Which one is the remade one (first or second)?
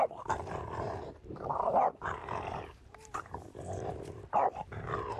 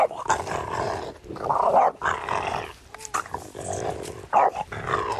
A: first